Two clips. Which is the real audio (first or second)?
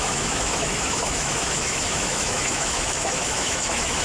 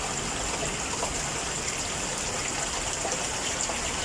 second